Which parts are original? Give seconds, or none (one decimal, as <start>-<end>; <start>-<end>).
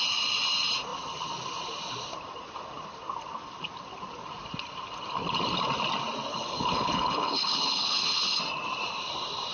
0.0-6.3; 8.4-9.5